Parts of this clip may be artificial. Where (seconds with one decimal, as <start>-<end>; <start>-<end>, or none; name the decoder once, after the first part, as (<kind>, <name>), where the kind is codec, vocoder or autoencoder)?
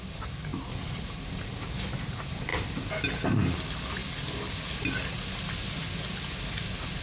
0.5-1.5 (vocoder, BigVGAN v2)